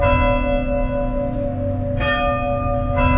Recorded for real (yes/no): yes